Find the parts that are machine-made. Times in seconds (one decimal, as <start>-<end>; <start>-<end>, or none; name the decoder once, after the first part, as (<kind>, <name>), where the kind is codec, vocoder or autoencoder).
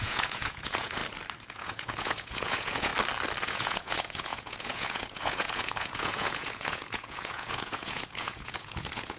0.0-1.0 (vocoder, Vocos); 1.5-2.9; 3.4-9.2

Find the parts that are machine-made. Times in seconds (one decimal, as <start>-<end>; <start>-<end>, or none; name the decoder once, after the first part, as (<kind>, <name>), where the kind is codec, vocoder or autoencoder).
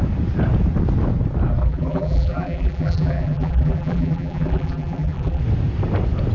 1.6-5.4 (vocoder, BigVGAN v2)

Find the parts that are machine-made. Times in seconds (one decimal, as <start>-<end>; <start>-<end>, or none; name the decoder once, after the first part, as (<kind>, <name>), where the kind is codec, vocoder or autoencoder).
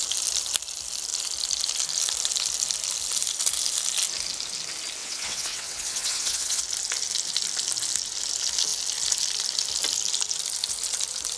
5.0-6.6 (vocoder, WaveNeXt)